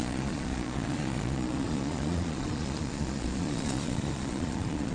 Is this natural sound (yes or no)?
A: no